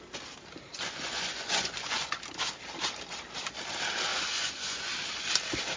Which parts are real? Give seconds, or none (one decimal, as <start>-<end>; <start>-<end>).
0.0-0.7; 2.2-4.1; 4.9-5.8